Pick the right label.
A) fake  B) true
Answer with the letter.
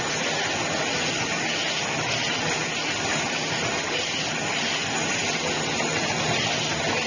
B